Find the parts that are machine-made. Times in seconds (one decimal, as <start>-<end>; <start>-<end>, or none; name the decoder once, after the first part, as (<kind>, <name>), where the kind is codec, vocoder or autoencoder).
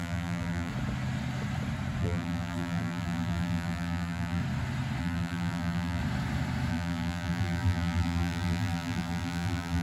0.0-0.7 (vocoder, BigVGAN v2); 2.0-4.4; 5.0-6.0; 6.7-9.8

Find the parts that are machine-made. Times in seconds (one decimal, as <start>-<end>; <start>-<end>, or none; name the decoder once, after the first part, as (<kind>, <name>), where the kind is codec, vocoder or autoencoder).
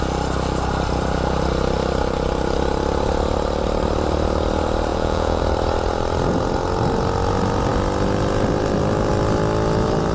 4.9-5.4 (vocoder, Vocos)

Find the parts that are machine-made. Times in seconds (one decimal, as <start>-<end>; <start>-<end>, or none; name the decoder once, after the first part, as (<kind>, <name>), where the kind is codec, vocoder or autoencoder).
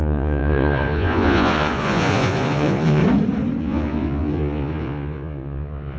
0.0-3.0 (vocoder, Vocos); 3.6-6.0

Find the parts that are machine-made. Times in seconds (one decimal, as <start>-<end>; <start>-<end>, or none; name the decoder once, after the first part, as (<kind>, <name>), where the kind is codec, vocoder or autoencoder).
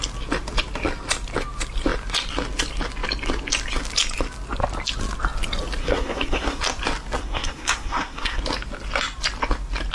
5.8-6.6 (codec, SNAC); 7.2-8.4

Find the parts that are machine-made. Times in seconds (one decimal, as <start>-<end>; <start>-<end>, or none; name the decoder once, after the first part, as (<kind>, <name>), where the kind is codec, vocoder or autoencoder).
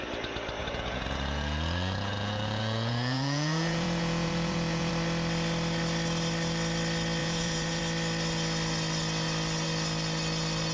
0.6-4.9 (vocoder, Vocos); 7.2-7.8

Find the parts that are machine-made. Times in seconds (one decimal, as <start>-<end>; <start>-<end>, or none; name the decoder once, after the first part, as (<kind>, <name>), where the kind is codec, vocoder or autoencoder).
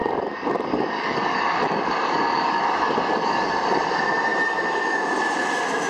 0.0-3.5 (codec, DAC)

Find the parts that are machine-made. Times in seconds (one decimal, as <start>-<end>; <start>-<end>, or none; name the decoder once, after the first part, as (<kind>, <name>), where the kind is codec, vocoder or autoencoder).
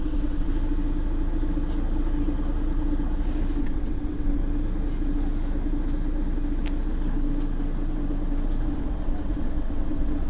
0.0-0.5 (vocoder, WaveNeXt); 3.6-4.4; 8.7-10.3